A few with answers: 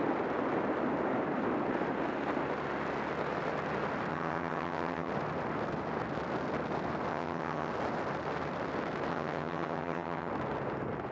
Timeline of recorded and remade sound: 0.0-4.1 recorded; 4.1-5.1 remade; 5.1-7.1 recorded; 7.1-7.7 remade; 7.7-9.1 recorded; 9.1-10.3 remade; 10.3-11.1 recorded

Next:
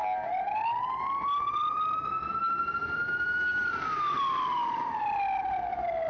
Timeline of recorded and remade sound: 0.0-6.1 recorded

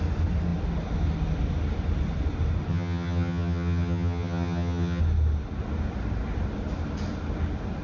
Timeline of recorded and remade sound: 0.0-2.7 recorded; 2.7-5.0 remade; 5.0-7.8 recorded

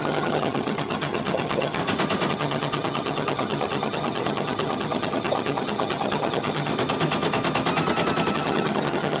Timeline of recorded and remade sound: 0.0-1.8 remade; 1.8-2.3 recorded; 2.3-6.7 remade; 6.7-8.3 recorded; 8.3-9.2 remade

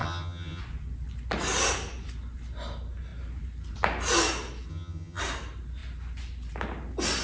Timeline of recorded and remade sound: 0.0-0.6 remade; 0.6-4.7 recorded; 4.7-5.2 remade; 5.2-7.2 recorded

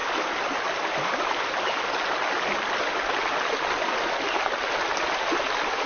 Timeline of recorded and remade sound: 0.0-5.9 recorded